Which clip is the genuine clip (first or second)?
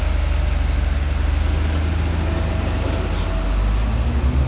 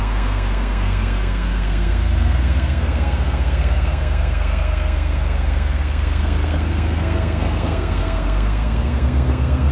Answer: first